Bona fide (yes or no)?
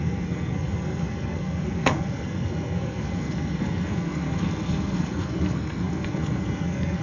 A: no